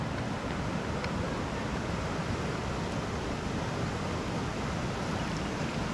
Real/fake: real